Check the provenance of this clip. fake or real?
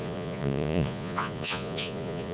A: fake